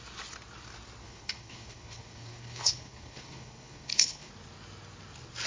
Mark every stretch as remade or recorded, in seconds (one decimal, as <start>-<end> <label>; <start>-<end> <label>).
0.0-1.0 recorded; 1.0-4.3 remade; 4.3-5.5 recorded